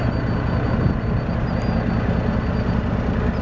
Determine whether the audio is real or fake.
real